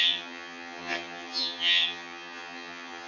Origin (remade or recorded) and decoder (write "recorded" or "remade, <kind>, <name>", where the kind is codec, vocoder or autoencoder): remade, vocoder, HiFi-GAN